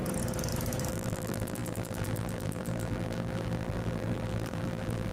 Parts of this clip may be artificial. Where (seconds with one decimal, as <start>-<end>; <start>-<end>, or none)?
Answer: 0.9-5.1